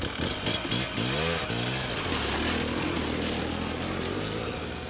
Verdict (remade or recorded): recorded